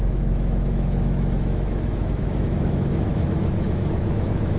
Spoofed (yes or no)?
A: yes